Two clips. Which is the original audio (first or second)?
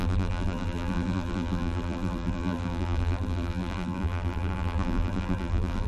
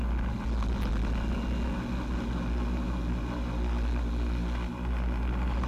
second